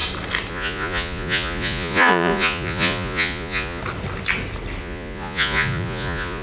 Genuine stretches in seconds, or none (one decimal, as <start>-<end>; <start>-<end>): 0.0-0.5; 3.8-4.8